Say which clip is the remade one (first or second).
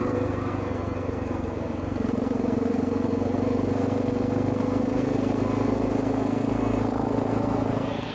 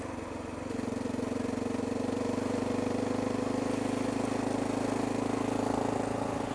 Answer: first